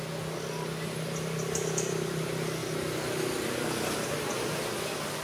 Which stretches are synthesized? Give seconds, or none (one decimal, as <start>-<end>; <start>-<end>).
none